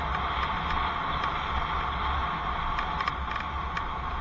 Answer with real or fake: real